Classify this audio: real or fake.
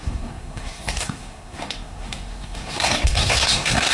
fake